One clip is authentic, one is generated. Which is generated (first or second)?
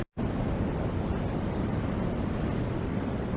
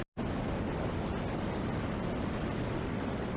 first